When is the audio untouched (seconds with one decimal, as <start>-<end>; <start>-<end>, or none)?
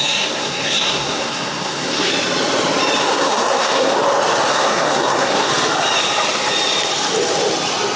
2.1-3.0; 4.0-4.5; 5.5-8.0